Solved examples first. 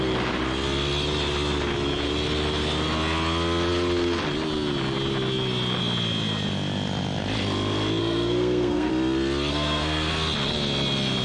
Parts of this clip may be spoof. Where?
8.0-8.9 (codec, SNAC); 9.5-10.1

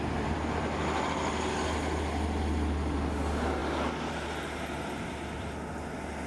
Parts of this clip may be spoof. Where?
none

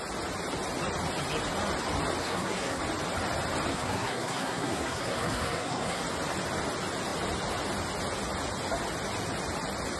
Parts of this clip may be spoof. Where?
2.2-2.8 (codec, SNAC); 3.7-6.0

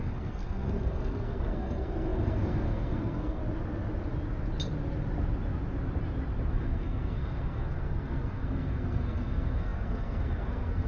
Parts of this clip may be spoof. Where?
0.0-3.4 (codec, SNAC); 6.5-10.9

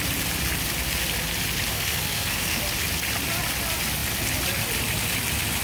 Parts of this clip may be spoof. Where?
1.7-2.6 (codec, SNAC)

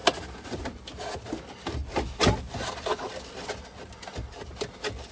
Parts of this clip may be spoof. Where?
none

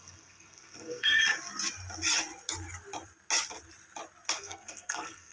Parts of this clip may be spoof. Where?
0.0-1.2 (codec, SNAC); 4.3-5.3

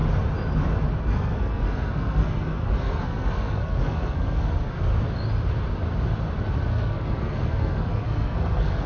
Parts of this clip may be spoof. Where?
1.0-4.9 (codec, SNAC); 6.7-8.9